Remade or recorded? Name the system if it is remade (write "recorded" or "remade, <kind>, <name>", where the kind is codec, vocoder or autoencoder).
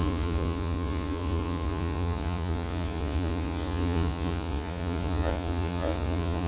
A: remade, vocoder, Vocos